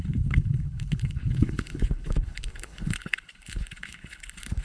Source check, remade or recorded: remade